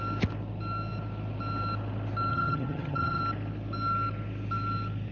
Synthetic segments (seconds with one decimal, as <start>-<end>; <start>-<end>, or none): 2.3-3.2